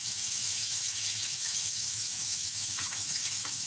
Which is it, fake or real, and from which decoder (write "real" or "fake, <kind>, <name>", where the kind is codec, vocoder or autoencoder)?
fake, autoencoder, DAC-VAE